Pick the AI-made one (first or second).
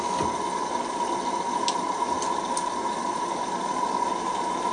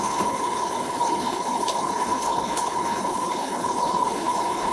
second